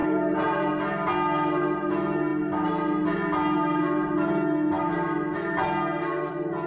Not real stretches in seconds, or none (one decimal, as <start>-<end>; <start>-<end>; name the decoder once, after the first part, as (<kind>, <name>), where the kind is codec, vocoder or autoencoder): 0.0-0.7 (vocoder, Vocos)